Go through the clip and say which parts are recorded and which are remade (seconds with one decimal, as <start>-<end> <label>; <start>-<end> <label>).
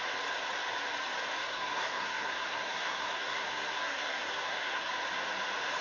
0.0-1.4 recorded; 1.4-4.9 remade; 4.9-5.8 recorded